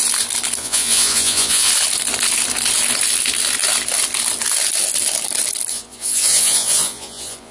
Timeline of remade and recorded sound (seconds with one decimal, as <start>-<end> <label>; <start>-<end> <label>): 0.0-0.6 recorded; 0.6-1.7 remade; 1.7-5.7 recorded; 5.7-7.5 remade